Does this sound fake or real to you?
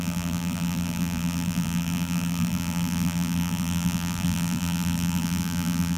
fake